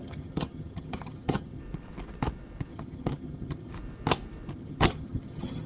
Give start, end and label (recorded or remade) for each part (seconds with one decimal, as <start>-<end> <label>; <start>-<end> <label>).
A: 0.0-1.6 remade; 1.6-2.7 recorded; 2.7-3.7 remade; 3.7-4.5 recorded; 4.5-5.7 remade